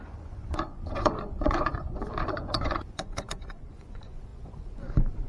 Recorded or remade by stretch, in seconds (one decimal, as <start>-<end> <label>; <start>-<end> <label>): 0.0-5.3 remade